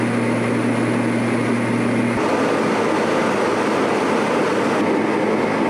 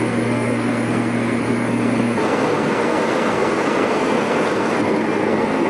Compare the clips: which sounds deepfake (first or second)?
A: second